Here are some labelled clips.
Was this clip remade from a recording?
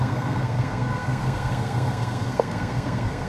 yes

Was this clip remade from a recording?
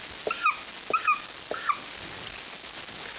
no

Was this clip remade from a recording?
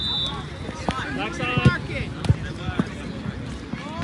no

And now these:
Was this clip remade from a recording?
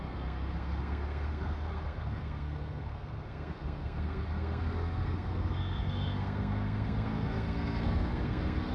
yes